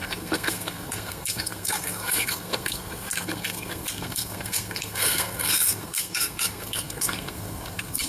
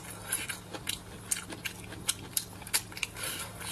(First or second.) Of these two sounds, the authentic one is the second